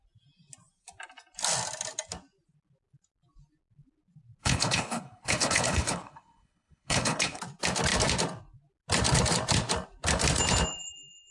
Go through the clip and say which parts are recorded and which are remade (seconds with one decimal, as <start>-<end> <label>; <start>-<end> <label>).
0.0-4.4 recorded; 4.4-7.4 remade; 7.4-11.3 recorded